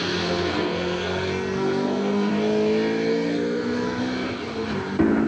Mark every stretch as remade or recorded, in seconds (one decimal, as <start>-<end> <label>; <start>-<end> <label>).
0.0-2.3 remade; 2.3-3.1 recorded; 3.1-4.0 remade; 4.0-5.3 recorded